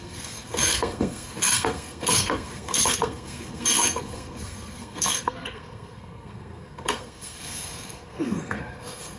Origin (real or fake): fake